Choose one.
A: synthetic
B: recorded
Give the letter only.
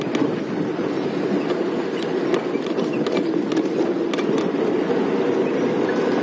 B